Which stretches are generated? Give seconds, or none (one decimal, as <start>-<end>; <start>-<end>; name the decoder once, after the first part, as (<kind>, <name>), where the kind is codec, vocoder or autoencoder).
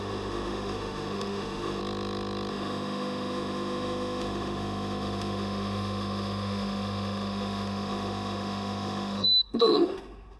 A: 0.0-1.8 (autoencoder, DAC-VAE); 2.5-10.4